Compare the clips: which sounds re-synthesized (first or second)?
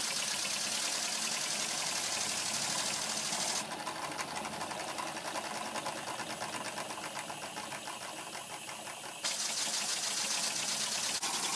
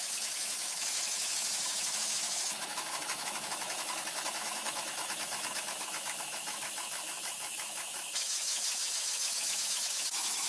second